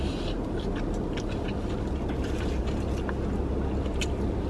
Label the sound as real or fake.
real